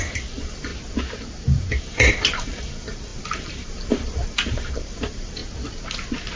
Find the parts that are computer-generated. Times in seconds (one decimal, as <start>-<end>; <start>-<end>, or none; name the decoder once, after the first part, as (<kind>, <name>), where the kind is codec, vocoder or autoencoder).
0.0-0.7 (vocoder, BigVGAN v2); 1.8-5.4